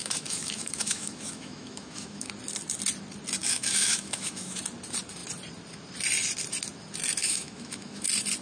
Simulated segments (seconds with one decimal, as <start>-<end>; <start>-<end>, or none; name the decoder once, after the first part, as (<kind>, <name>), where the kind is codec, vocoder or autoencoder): 0.0-2.3 (autoencoder, DAC-VAE); 3.4-4.6; 7.2-8.0